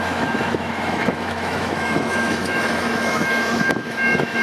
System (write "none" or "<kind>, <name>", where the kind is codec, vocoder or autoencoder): autoencoder, DAC-VAE